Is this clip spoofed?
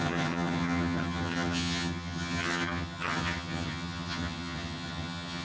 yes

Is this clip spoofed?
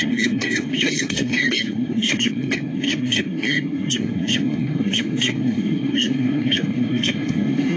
yes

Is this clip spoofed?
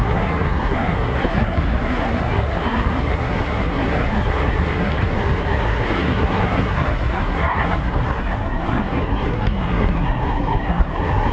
yes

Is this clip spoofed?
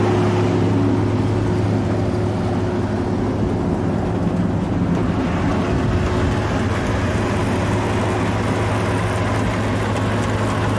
no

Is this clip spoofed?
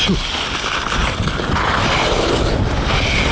no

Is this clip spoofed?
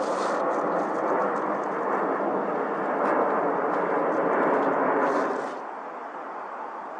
no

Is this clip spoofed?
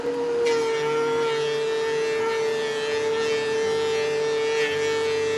no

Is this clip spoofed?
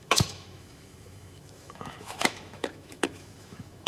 yes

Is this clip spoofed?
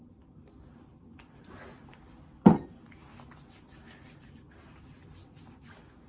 no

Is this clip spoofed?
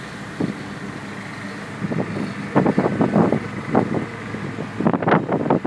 no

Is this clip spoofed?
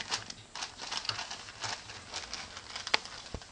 no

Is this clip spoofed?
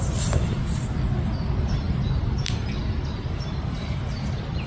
no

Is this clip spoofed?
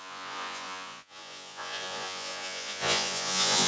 yes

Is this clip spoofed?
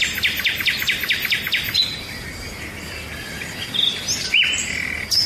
no